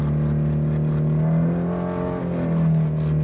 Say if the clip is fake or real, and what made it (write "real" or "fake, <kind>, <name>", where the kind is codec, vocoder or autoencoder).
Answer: real